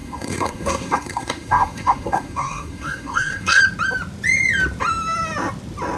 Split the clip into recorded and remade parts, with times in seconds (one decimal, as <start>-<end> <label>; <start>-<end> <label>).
0.0-3.6 remade; 3.6-6.0 recorded

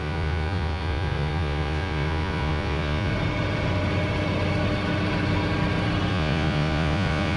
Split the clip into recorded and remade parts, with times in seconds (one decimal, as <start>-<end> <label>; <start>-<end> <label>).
0.0-3.1 remade; 3.1-6.1 recorded; 6.1-7.4 remade

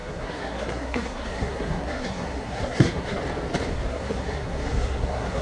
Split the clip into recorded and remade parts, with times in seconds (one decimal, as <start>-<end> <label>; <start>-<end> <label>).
0.0-3.2 remade; 3.2-3.9 recorded; 3.9-5.4 remade

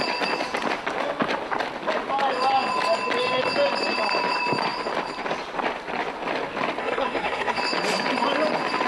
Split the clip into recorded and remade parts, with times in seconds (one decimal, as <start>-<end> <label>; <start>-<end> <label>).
0.0-6.8 recorded; 6.8-7.6 remade; 7.6-8.9 recorded

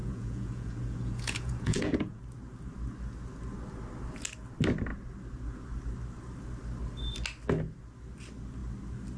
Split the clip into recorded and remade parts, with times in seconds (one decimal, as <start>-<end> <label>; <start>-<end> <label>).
0.0-2.2 remade; 2.2-9.2 recorded